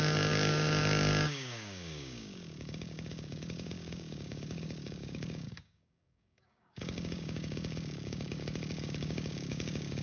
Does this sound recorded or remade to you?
remade